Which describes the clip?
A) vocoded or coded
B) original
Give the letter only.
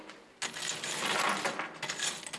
B